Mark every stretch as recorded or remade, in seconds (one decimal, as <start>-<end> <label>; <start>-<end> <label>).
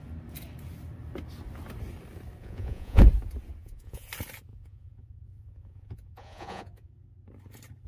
0.0-2.4 recorded; 2.4-3.0 remade; 3.0-3.6 recorded; 3.6-4.1 remade; 4.1-4.5 recorded; 4.5-6.9 remade; 6.9-7.9 recorded